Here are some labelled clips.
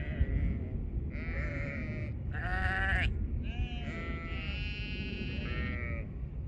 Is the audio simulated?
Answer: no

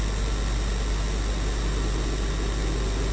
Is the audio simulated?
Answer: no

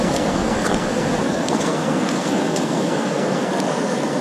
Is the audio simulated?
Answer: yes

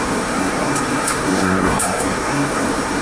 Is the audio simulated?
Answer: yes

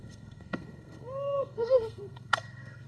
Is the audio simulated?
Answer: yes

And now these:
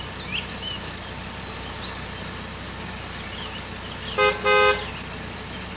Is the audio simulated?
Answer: no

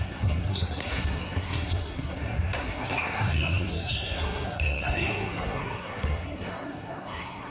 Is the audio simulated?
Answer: yes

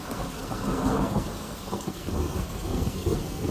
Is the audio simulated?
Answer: yes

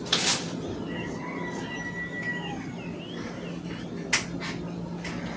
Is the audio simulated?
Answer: no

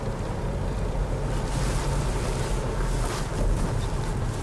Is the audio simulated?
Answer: no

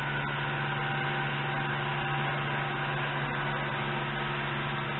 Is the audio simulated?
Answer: no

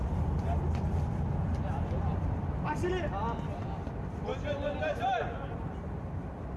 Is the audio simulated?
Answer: no